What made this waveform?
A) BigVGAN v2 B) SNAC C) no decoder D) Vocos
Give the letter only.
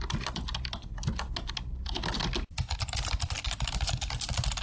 C